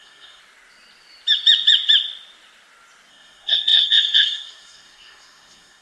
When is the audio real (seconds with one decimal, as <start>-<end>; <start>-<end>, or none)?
0.4-3.1